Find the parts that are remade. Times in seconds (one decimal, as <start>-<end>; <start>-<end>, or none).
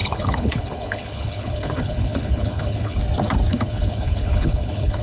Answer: 0.0-3.0; 3.5-5.0